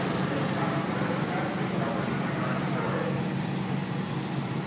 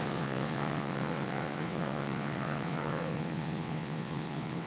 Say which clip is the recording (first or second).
first